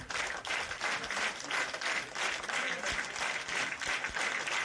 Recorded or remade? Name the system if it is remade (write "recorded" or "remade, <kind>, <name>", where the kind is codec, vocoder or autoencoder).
recorded